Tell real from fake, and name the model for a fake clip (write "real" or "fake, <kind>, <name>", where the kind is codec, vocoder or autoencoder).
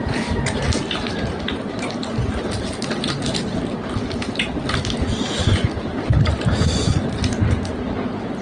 real